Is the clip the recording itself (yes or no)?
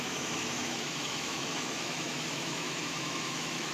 no